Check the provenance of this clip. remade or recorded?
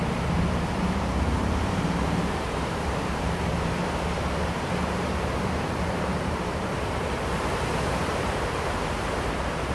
remade